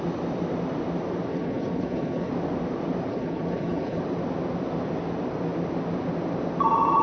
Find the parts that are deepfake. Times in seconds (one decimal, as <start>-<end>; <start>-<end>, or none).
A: 1.3-2.3; 3.1-4.0